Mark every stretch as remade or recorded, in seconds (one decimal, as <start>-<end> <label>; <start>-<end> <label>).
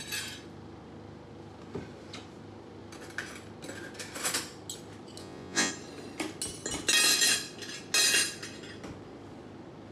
0.0-5.2 recorded; 5.2-5.7 remade; 5.7-9.9 recorded